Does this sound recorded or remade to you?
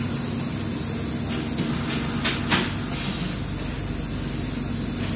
recorded